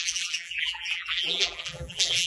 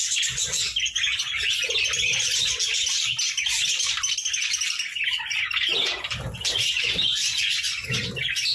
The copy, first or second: first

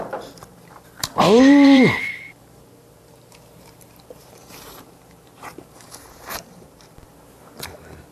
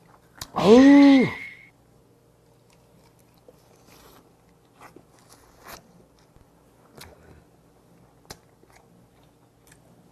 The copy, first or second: first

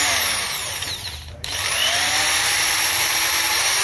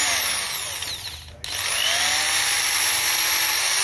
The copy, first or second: first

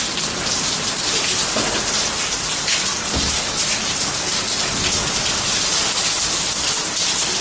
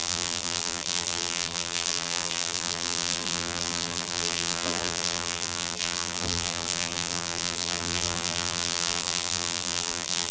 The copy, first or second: second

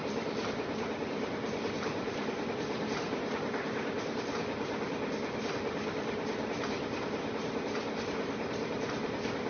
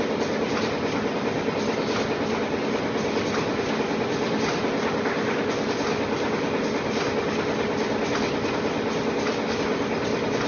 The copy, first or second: first